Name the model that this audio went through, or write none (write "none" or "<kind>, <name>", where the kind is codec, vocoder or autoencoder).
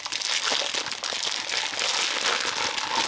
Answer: none